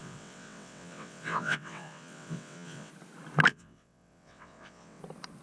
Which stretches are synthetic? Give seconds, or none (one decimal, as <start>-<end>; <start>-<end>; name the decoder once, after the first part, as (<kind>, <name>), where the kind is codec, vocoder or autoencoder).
0.0-2.9 (vocoder, WaveNeXt); 3.5-5.0